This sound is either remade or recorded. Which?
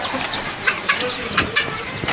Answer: recorded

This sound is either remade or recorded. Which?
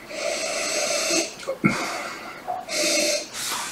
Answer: remade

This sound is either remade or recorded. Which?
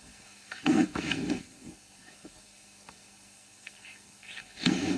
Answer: remade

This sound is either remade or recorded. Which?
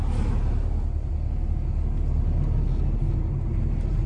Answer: recorded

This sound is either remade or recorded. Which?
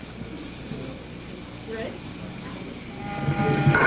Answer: recorded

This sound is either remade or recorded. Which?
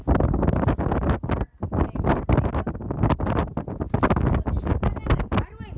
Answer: recorded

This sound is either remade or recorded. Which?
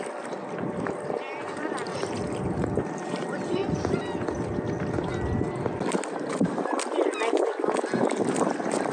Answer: recorded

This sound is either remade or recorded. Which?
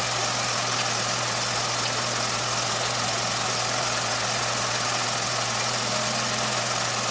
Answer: recorded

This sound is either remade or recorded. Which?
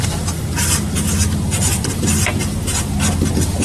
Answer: remade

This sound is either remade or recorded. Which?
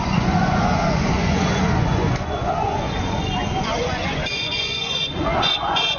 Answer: remade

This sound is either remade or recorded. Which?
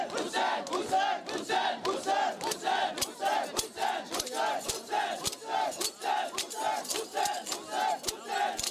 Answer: recorded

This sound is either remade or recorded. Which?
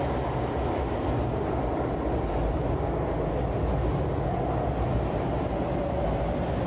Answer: recorded